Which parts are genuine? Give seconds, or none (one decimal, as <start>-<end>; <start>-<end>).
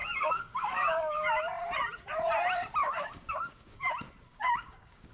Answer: 1.4-2.8; 3.9-4.3